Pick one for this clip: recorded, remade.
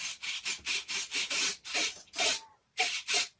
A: recorded